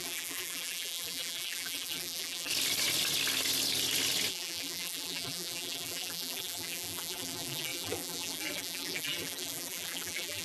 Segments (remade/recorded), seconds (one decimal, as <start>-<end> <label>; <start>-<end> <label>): 0.0-2.5 remade; 2.5-4.3 recorded; 4.3-10.4 remade